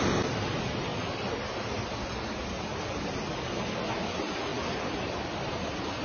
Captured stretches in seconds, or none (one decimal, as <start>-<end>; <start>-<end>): 0.0-6.0